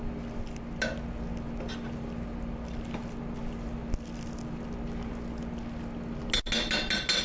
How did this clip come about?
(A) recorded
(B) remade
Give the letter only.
A